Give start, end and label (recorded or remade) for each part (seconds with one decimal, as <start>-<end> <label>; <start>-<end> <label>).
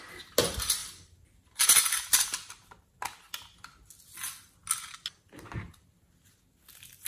0.0-7.1 recorded